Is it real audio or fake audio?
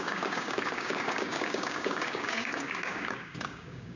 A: fake